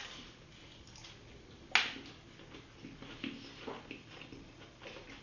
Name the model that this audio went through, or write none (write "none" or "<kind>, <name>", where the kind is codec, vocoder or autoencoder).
none